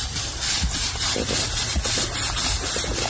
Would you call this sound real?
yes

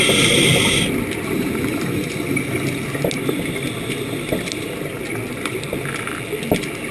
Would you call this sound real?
yes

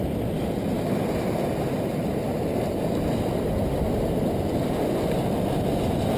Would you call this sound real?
yes